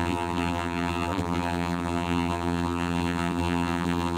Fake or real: fake